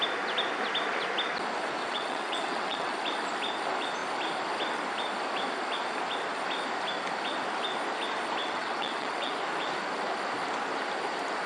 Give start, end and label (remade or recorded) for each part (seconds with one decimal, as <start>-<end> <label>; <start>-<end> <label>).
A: 0.0-1.8 recorded; 1.8-2.9 remade; 2.9-8.4 recorded; 8.4-9.3 remade; 9.3-11.5 recorded